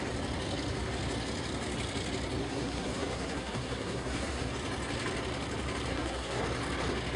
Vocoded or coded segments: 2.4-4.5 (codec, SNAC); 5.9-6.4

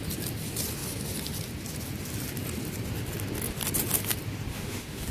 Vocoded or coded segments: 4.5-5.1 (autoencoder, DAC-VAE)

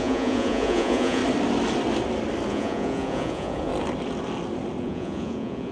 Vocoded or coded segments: 0.0-1.2 (vocoder, Vocos); 2.5-3.7; 4.8-5.7